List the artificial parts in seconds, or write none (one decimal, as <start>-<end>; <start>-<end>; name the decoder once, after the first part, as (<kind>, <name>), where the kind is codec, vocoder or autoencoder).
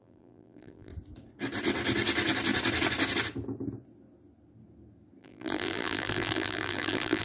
0.0-0.9 (vocoder, BigVGAN v2); 5.2-7.2